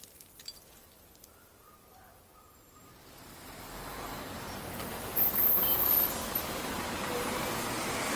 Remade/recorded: remade